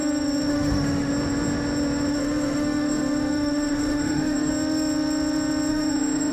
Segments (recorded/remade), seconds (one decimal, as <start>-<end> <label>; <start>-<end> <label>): 0.0-0.5 recorded; 0.5-1.1 remade; 1.1-2.1 recorded; 2.1-4.5 remade; 4.5-5.7 recorded; 5.7-6.3 remade